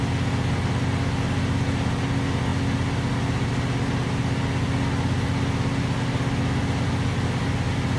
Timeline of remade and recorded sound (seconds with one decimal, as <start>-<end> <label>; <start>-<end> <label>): 0.0-8.0 recorded